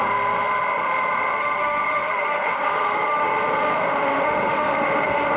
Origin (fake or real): fake